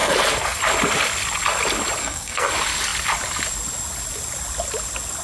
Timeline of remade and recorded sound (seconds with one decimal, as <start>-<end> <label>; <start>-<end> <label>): 0.0-0.6 remade; 0.6-2.0 recorded; 2.0-2.5 remade; 2.5-5.2 recorded